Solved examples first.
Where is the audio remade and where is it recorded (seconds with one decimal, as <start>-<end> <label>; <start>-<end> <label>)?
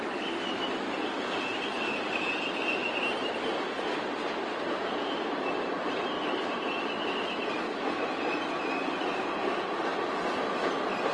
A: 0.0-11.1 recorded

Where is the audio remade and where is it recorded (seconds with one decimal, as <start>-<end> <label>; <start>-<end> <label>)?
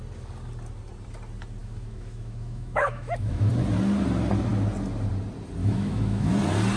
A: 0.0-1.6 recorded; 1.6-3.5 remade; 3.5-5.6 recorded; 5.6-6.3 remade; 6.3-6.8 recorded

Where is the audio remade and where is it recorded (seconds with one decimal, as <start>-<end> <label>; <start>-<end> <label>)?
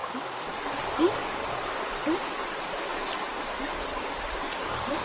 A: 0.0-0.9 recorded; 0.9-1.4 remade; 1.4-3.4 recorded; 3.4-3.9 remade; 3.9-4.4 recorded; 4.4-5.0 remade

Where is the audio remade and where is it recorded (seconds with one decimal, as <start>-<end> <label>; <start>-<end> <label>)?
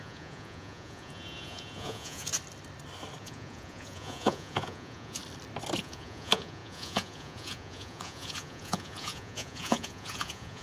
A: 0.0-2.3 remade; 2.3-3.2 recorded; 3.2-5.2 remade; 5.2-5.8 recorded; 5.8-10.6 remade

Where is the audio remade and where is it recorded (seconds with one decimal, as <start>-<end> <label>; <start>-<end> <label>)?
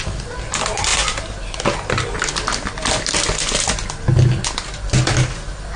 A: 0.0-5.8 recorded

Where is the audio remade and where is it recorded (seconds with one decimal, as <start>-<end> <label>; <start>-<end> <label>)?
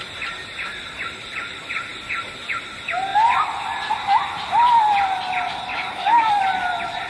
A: 0.0-5.7 recorded; 5.7-6.4 remade; 6.4-7.1 recorded